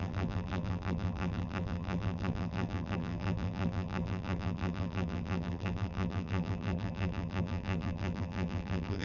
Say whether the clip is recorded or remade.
remade